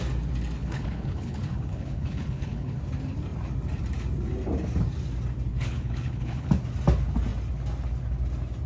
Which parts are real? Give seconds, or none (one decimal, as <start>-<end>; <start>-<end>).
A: 0.0-0.6; 2.8-5.5; 6.5-8.7